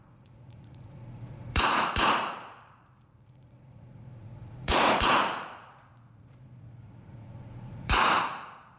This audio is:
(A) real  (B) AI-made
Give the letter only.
B